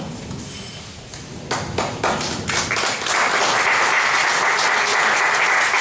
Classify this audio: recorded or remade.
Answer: recorded